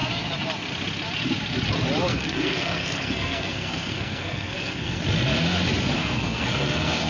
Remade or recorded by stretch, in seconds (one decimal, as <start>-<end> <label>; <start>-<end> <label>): 0.0-2.1 recorded; 2.1-5.0 remade; 5.0-6.0 recorded; 6.0-7.1 remade